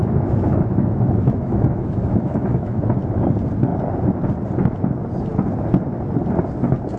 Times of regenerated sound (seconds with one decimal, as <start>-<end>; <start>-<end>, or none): 0.0-2.8